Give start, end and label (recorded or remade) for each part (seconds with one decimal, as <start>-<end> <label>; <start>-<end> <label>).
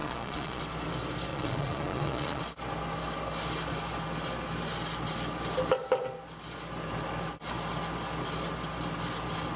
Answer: 0.0-0.6 remade; 0.6-1.3 recorded; 1.3-2.4 remade; 2.4-9.6 recorded